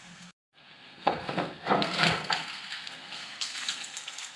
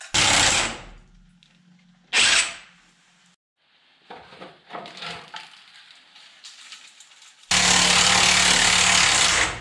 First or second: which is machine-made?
first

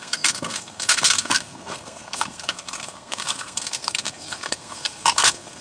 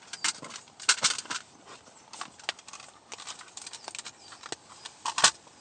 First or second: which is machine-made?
first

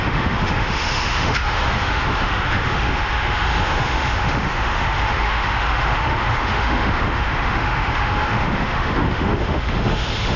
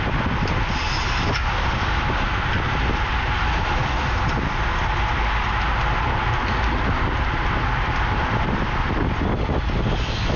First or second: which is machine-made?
first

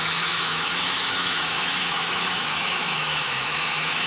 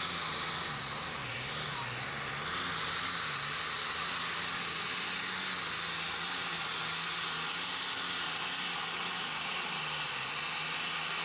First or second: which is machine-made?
first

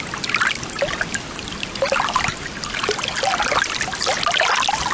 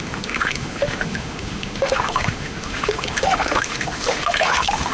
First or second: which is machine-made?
second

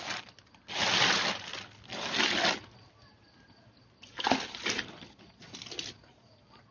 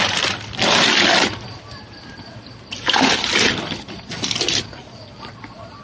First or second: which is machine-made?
second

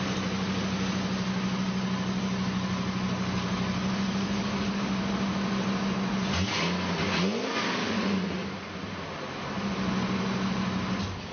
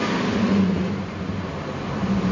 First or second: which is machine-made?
second